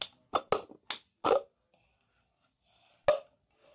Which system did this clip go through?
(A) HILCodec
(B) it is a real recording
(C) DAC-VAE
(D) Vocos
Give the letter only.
B